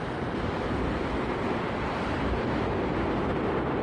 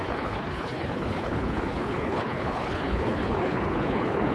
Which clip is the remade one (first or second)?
second